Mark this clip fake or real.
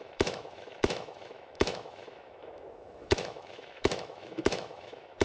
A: fake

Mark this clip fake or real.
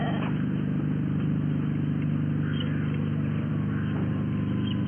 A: real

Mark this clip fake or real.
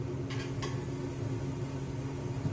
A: real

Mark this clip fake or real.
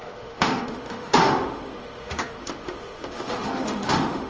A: fake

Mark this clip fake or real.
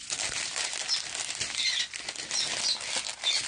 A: real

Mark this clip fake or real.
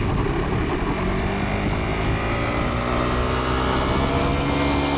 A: real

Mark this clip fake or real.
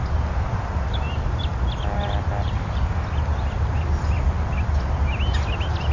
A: real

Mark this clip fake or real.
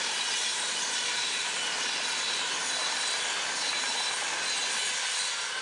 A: real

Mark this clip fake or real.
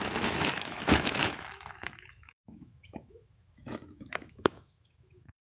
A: fake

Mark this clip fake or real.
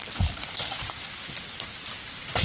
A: real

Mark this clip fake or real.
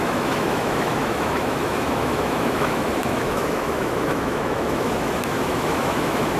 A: fake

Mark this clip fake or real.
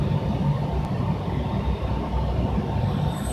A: real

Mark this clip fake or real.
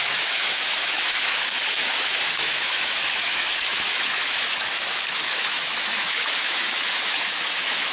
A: fake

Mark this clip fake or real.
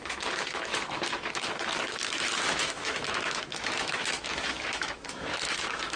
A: fake